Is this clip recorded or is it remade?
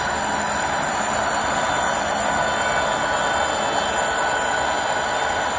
recorded